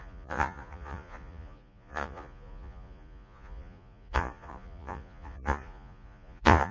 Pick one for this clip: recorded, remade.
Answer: remade